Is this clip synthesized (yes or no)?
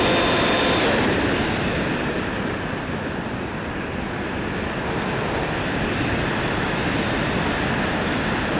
no